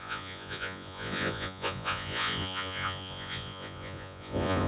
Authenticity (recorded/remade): remade